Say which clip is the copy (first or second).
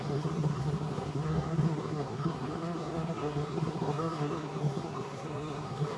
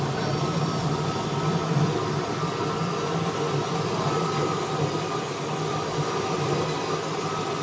first